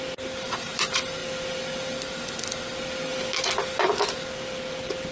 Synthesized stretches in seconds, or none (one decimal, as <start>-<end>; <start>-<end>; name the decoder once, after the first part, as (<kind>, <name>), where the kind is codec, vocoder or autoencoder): none

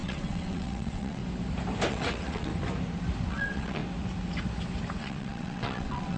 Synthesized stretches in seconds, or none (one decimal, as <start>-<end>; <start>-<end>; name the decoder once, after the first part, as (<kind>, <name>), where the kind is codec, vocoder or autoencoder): 0.0-1.2 (vocoder, WaveNeXt); 1.9-2.5; 3.3-3.8; 5.0-6.2